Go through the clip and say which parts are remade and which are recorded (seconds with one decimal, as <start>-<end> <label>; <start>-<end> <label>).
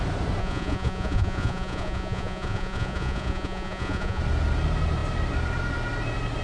0.0-0.4 recorded; 0.4-4.2 remade; 4.2-6.4 recorded